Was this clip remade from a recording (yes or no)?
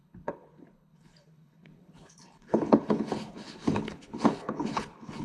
yes